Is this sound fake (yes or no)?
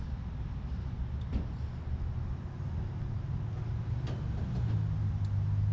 no